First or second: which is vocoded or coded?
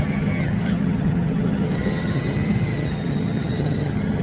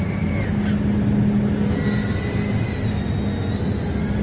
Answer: first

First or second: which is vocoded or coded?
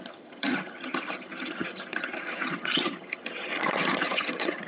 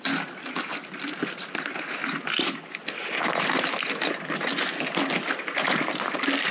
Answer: first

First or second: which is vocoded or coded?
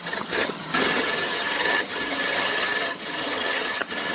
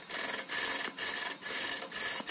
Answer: first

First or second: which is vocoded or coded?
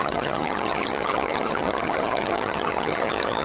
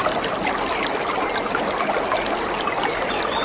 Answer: first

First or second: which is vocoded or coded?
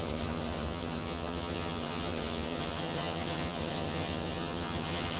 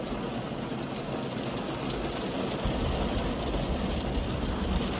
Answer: first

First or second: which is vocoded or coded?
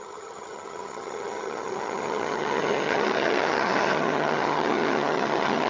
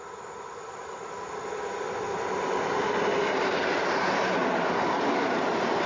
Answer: first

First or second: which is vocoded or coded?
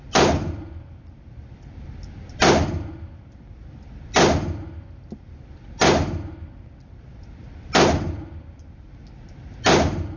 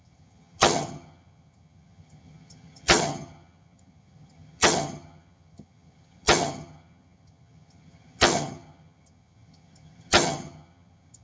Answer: second